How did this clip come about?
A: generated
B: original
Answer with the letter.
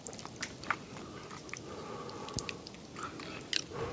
B